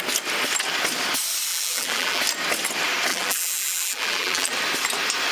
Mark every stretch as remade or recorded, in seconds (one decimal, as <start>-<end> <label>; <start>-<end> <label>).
0.0-1.5 recorded; 1.5-2.2 remade; 2.2-3.1 recorded; 3.1-4.5 remade; 4.5-5.3 recorded